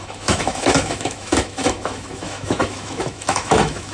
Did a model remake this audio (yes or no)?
yes